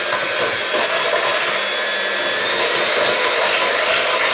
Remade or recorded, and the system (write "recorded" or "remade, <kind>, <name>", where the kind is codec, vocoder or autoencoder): recorded